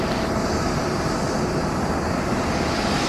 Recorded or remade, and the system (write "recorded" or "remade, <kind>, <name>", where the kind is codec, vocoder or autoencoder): recorded